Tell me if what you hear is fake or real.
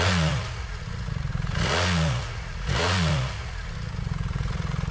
fake